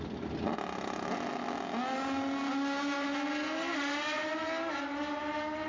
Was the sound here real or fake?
real